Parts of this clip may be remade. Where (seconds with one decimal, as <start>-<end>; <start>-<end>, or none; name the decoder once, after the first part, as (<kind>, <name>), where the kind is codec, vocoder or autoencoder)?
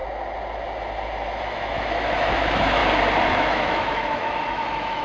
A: 1.4-2.8 (autoencoder, DAC-VAE); 3.3-5.0